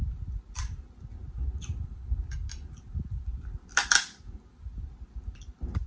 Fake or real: real